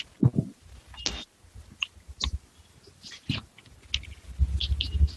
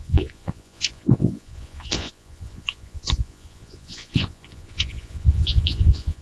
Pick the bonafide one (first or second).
first